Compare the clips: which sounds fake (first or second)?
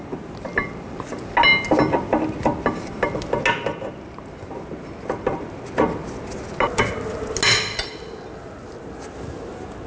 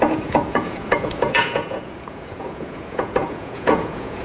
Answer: second